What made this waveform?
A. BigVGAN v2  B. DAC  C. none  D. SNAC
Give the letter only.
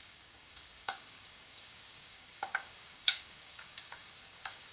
B